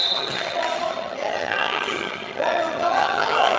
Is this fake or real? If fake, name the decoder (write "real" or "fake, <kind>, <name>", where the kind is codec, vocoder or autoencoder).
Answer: fake, vocoder, HiFi-GAN